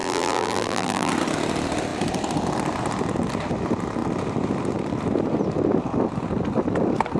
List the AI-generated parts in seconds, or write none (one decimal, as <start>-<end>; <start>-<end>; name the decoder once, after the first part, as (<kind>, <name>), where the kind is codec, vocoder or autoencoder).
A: 0.0-1.1 (vocoder, BigVGAN v2)